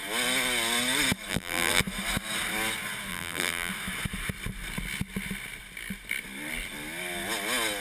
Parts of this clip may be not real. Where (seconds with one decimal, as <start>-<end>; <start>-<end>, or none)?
1.3-1.8; 3.1-3.7